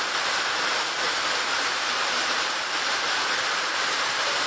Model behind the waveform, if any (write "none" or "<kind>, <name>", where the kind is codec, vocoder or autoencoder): vocoder, BigVGAN v2